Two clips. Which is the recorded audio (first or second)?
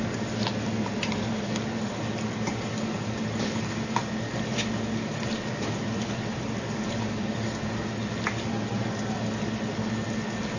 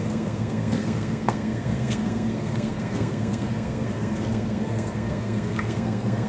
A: first